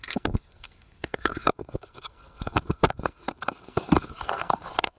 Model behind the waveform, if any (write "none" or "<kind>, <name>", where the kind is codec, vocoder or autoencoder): codec, SNAC